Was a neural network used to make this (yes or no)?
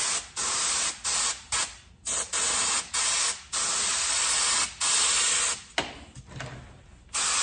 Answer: no